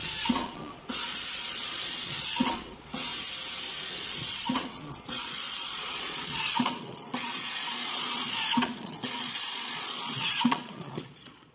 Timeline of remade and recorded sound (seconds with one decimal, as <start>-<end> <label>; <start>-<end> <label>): 0.0-3.1 remade; 3.1-3.9 recorded; 3.9-11.5 remade